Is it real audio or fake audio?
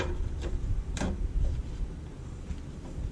fake